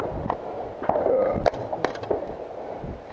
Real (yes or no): yes